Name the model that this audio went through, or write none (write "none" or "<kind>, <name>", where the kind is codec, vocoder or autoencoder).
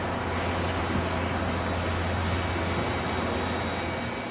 none